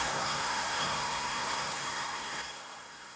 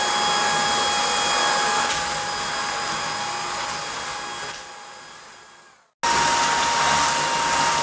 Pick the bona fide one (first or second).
second